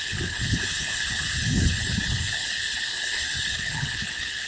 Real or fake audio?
fake